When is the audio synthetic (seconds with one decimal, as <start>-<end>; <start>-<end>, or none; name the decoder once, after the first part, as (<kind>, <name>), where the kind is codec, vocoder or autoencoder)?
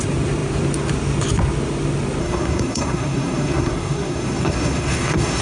2.2-5.4 (codec, SNAC)